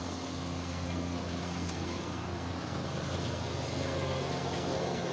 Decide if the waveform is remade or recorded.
remade